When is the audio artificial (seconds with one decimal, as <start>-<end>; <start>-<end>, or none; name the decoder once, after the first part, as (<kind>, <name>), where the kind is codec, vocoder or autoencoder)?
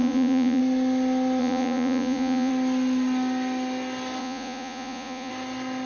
0.0-0.6 (vocoder, Vocos); 1.4-2.5; 4.2-5.3